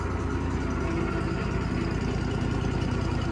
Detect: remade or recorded recorded